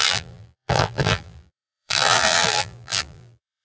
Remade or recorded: remade